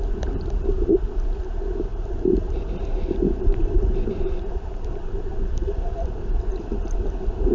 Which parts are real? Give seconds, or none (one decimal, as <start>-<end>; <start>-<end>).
0.0-1.9; 6.4-7.5